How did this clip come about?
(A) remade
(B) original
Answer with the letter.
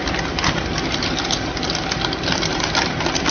A